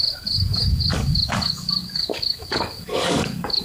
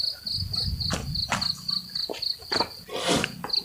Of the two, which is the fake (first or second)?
first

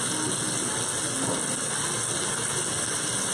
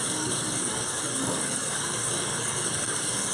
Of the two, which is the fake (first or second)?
second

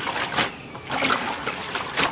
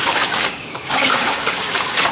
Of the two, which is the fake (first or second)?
second